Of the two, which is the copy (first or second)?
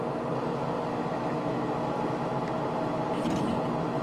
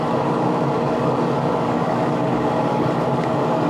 second